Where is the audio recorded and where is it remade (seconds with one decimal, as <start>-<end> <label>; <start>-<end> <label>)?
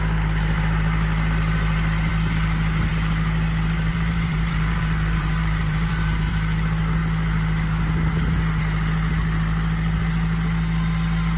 0.0-3.9 recorded; 3.9-6.3 remade; 6.3-11.4 recorded